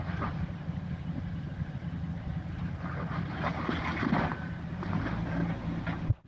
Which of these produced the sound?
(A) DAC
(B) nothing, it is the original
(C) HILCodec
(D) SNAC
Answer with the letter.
B